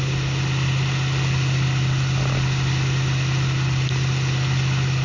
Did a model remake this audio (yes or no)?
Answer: no